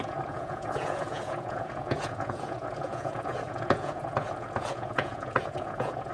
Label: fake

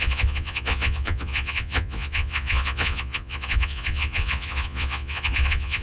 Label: fake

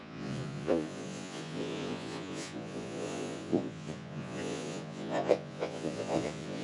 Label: fake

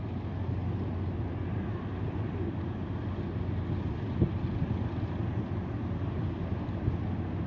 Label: real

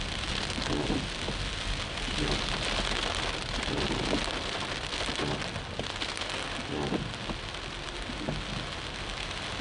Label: real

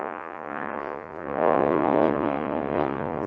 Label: fake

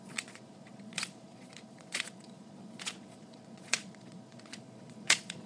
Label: fake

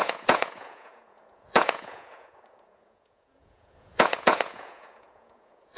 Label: fake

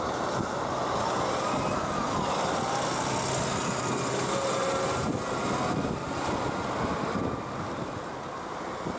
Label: real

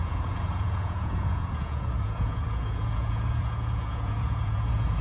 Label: fake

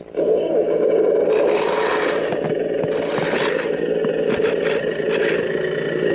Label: real